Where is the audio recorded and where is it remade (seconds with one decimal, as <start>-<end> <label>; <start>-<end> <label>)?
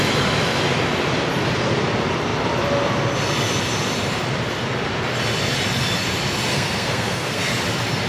0.0-6.5 recorded; 6.5-7.4 remade; 7.4-8.1 recorded